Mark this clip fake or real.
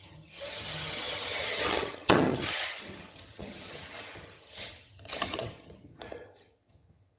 fake